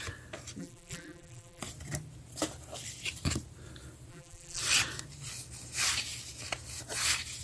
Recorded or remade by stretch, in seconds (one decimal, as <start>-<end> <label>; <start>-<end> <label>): 0.0-0.6 recorded; 0.6-1.6 remade; 1.6-4.1 recorded; 4.1-4.6 remade; 4.6-7.4 recorded